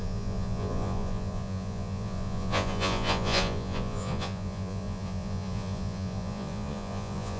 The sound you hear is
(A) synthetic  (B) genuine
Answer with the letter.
A